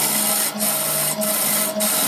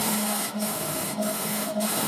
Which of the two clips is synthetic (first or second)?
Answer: second